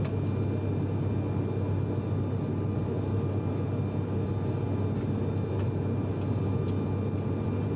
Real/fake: real